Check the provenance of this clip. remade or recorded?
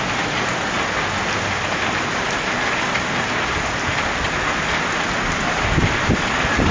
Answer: recorded